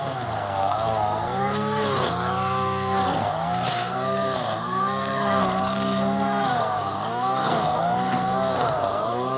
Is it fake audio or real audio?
fake